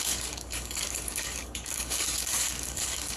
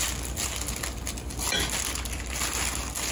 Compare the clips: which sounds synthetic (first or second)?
first